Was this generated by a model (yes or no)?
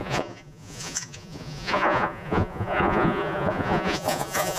yes